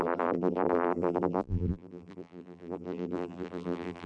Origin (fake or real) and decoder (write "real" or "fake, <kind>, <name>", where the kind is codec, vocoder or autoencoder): fake, vocoder, BigVGAN v2